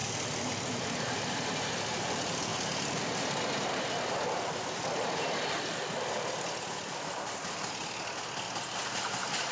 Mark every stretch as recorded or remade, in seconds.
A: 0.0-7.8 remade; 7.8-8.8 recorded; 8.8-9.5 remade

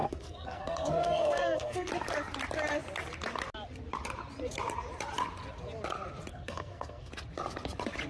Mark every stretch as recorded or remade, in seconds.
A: 0.0-1.9 remade; 1.9-6.3 recorded; 6.3-7.1 remade; 7.1-8.1 recorded

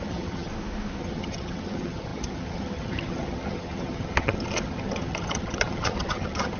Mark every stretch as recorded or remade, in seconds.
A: 0.0-0.5 remade; 0.5-1.0 recorded; 1.0-6.6 remade

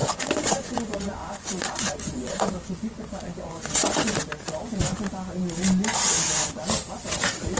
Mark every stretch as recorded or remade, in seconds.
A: 0.0-4.2 remade; 4.2-7.6 recorded

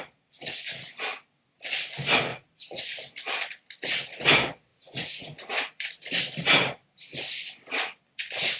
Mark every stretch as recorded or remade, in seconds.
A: 0.0-2.3 recorded; 2.3-2.8 remade; 2.8-4.7 recorded; 4.7-5.9 remade; 5.9-8.6 recorded

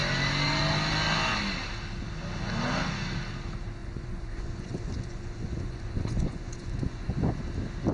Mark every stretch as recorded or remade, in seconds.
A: 0.0-3.8 recorded; 3.8-7.4 remade; 7.4-7.9 recorded

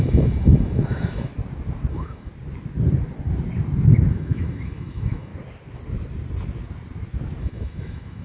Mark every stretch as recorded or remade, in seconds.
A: 0.0-1.3 remade; 1.3-1.9 recorded; 1.9-2.3 remade; 2.3-4.1 recorded; 4.1-5.3 remade; 5.3-7.4 recorded; 7.4-8.2 remade

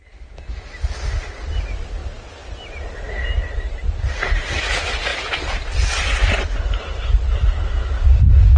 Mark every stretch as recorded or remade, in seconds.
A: 0.0-6.2 recorded; 6.2-6.8 remade; 6.8-8.6 recorded